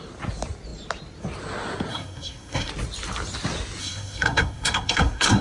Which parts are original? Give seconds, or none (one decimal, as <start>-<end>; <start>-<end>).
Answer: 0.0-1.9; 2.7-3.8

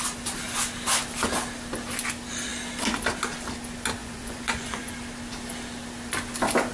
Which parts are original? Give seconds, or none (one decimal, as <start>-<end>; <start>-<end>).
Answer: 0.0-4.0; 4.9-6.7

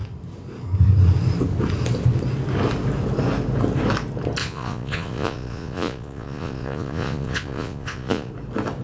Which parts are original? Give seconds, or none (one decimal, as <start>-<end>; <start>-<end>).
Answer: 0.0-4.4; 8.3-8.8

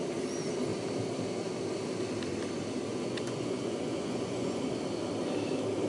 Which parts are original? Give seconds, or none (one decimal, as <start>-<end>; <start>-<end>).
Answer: 0.0-2.9; 4.6-5.9

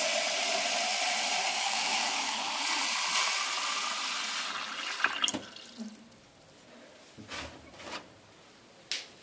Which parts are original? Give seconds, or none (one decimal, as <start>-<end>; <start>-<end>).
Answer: 0.0-1.5; 2.5-9.2